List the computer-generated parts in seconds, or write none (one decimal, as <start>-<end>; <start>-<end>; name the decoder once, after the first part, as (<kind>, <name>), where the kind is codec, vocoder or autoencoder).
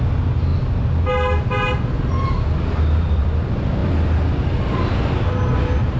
none